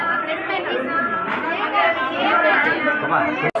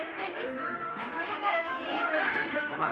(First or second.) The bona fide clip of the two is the first